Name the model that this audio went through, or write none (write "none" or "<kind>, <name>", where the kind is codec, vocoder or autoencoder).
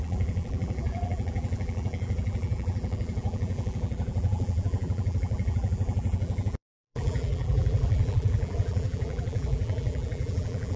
vocoder, BigVGAN v2